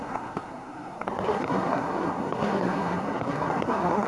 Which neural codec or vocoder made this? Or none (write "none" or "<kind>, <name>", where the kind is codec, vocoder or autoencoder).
codec, SNAC